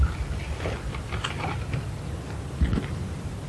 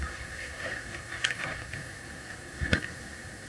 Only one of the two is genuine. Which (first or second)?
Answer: first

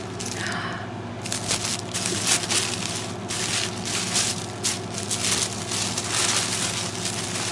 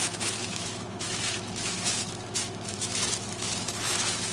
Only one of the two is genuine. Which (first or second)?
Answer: first